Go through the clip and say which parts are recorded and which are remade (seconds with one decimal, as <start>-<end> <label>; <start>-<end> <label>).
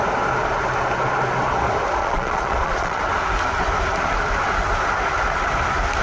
0.0-2.0 recorded; 2.0-3.0 remade; 3.0-6.0 recorded